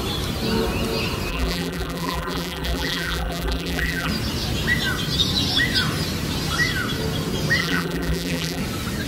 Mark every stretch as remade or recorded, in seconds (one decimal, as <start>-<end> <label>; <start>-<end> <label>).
0.0-1.3 recorded; 1.3-4.1 remade; 4.1-7.6 recorded; 7.6-8.6 remade; 8.6-9.1 recorded